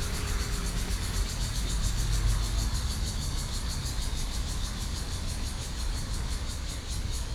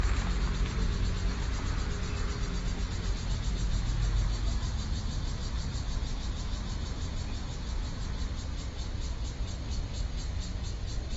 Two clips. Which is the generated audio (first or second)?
first